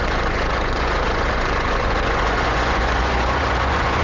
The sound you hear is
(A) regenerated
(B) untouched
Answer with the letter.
A